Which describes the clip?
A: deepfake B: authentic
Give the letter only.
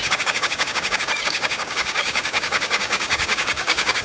A